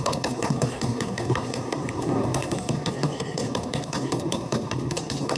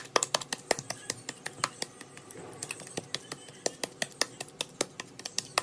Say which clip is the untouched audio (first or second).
second